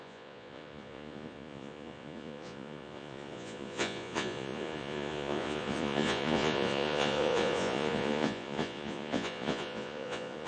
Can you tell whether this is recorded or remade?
remade